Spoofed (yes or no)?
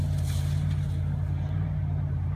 no